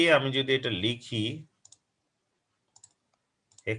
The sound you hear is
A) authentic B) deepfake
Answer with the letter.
A